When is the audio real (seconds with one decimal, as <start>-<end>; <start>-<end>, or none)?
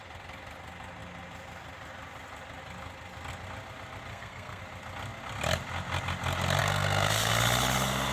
0.0-4.1; 4.6-6.6; 7.3-8.1